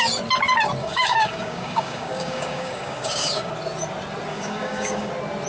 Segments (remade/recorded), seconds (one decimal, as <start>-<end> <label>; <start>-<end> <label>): 0.0-0.8 recorded; 0.8-3.5 remade; 3.5-4.3 recorded; 4.3-5.1 remade; 5.1-5.5 recorded